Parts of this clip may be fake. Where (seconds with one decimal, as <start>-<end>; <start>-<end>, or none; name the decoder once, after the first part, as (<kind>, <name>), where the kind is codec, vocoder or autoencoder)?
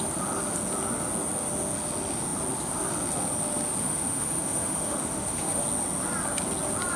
3.8-5.6 (autoencoder, DAC-VAE)